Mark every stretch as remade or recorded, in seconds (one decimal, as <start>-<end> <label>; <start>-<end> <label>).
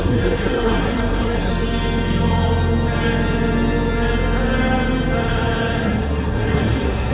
0.0-1.5 remade; 1.5-5.8 recorded; 5.8-7.1 remade